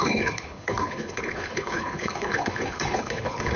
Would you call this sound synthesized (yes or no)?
yes